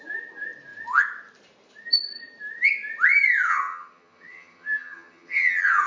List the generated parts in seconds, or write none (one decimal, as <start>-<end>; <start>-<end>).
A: 3.5-5.9